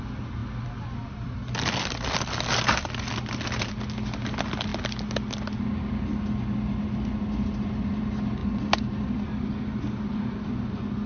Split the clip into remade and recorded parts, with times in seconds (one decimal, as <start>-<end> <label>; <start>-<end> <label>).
0.0-11.1 recorded